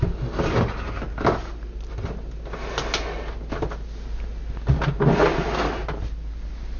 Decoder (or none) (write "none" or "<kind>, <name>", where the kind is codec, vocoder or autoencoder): none